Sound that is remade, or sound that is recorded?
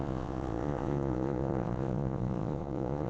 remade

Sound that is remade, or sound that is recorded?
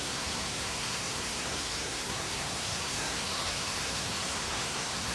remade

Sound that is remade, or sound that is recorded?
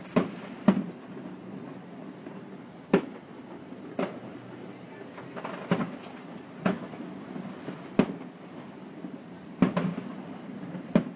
recorded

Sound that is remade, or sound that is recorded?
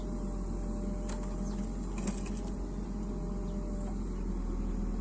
recorded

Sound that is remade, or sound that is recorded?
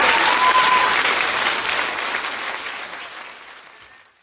recorded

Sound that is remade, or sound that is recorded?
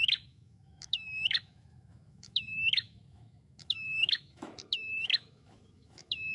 remade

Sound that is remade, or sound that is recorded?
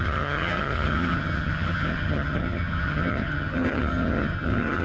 remade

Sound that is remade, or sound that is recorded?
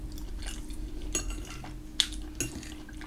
recorded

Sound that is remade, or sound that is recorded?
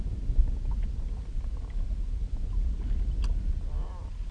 recorded